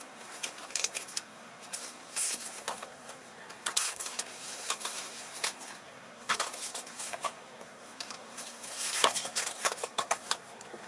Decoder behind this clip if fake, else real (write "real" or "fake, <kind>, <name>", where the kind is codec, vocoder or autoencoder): fake, codec, SNAC